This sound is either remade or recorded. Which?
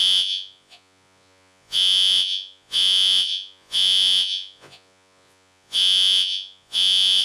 remade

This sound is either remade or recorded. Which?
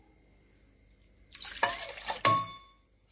recorded